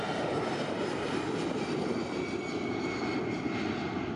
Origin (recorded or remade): remade